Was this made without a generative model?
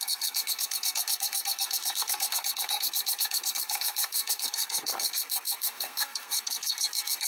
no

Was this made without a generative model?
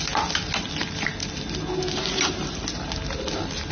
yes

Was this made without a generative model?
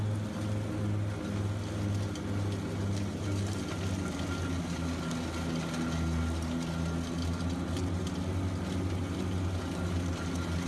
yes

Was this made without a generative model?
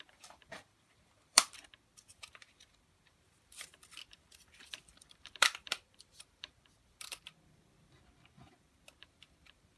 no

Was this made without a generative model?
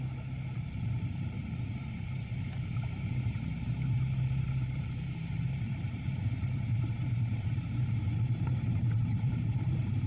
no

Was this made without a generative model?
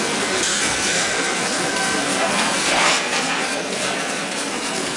no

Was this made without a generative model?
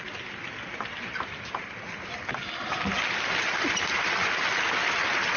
yes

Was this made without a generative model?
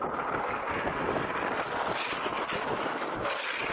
yes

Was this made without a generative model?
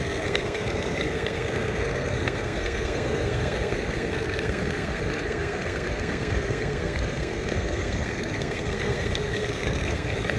no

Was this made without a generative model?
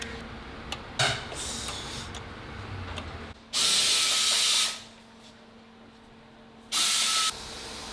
yes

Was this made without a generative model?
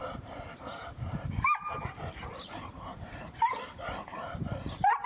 no